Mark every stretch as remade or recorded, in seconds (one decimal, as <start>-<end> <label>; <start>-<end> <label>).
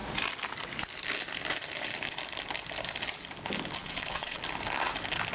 0.0-3.8 recorded; 3.8-4.4 remade; 4.4-5.3 recorded